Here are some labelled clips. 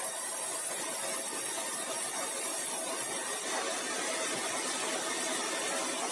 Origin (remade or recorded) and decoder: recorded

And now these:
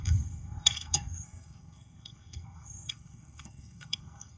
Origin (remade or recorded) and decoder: remade, codec, SNAC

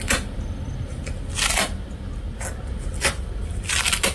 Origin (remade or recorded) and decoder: recorded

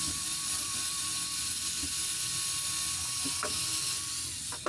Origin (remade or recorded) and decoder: recorded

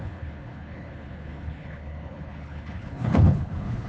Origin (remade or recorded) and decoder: remade, codec, HILCodec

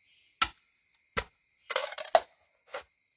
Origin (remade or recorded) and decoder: recorded